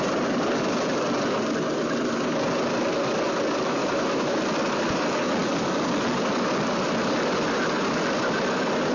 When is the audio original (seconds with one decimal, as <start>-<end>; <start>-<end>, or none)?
0.0-3.8; 4.4-8.9